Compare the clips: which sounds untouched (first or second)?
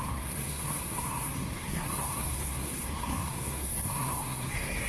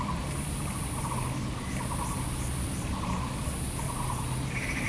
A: second